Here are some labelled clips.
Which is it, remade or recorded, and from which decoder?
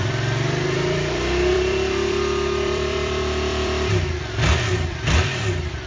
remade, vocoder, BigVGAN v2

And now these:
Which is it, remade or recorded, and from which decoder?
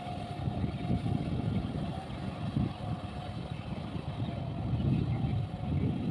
recorded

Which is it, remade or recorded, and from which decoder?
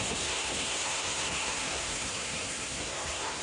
remade, codec, SNAC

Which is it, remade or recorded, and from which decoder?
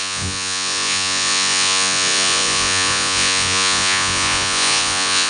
remade, vocoder, Vocos